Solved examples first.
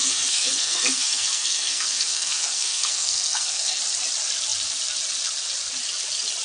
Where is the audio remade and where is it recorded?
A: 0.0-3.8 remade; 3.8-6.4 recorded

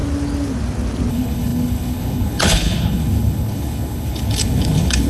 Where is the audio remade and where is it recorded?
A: 0.0-1.1 recorded; 1.1-5.1 remade